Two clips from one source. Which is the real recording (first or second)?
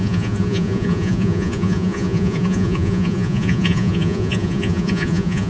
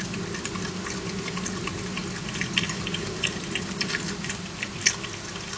second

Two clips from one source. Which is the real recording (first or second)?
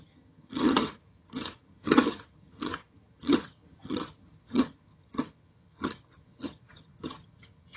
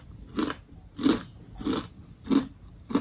second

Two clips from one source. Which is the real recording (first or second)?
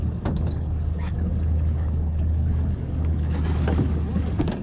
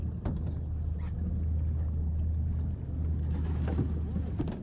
second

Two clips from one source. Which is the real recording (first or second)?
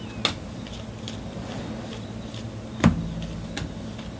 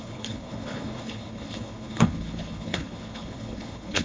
first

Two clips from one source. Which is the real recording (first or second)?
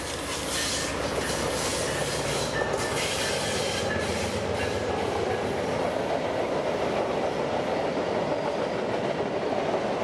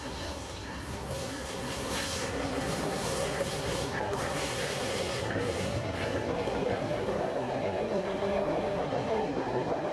first